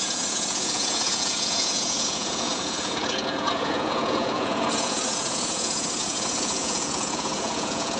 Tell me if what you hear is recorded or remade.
remade